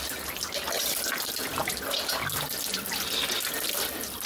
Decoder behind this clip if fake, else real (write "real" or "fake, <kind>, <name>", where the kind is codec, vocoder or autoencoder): real